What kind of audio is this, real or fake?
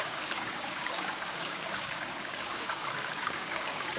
fake